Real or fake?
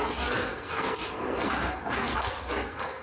fake